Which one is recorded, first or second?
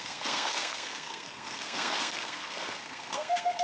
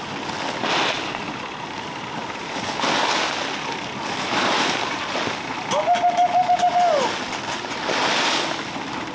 second